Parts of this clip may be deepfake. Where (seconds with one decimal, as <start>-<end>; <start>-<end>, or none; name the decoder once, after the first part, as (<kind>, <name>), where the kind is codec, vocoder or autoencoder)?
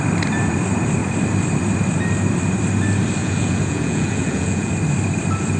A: 3.2-4.7 (vocoder, Vocos)